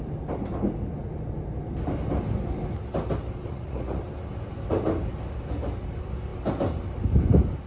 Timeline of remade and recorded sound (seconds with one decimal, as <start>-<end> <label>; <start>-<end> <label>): 0.0-3.5 recorded; 3.5-4.0 remade; 4.0-7.7 recorded